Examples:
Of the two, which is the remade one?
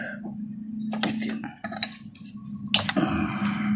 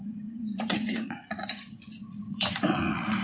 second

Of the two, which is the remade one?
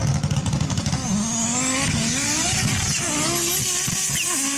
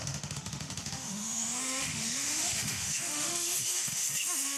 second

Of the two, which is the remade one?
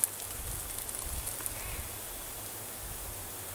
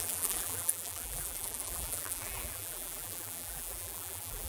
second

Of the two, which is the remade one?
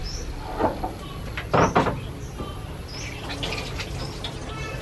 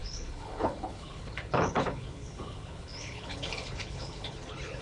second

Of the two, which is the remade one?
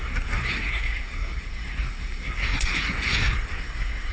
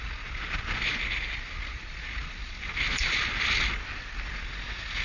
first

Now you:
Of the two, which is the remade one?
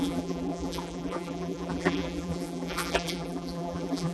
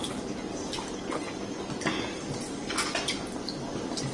first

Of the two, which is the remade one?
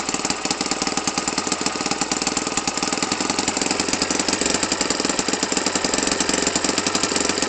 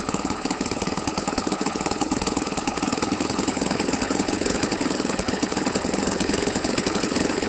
second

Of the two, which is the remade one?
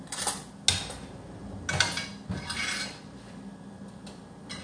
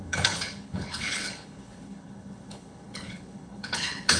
second